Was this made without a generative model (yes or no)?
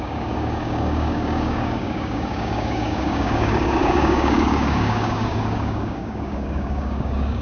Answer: no